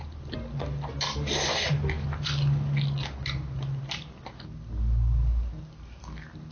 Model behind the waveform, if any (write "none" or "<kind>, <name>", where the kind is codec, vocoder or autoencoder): none